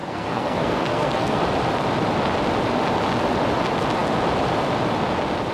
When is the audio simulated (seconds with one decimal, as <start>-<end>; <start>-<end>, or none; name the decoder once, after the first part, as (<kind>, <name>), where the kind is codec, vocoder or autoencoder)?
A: 0.0-1.4 (codec, SNAC)